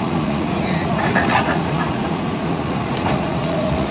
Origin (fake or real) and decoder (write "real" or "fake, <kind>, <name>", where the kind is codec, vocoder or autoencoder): fake, vocoder, Vocos